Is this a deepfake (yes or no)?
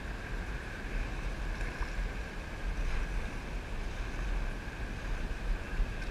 no